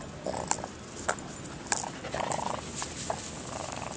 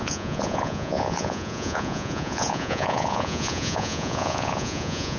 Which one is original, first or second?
first